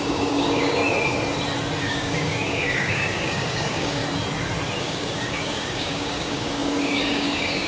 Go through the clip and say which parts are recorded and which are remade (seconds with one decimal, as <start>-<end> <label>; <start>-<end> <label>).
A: 0.0-0.8 remade; 0.8-1.8 recorded; 1.8-4.0 remade; 4.0-4.8 recorded; 4.8-7.7 remade